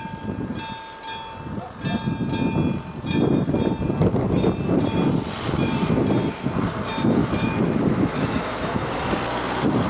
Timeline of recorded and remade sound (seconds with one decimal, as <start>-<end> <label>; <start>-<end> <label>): 0.0-7.2 recorded; 7.2-9.1 remade; 9.1-9.9 recorded